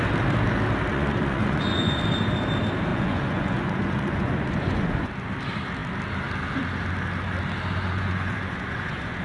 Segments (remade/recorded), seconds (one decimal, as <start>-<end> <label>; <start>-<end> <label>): 0.0-0.9 recorded; 0.9-2.0 remade; 2.0-2.9 recorded; 2.9-5.1 remade; 5.1-7.9 recorded; 7.9-9.2 remade